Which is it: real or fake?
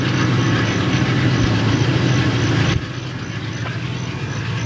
real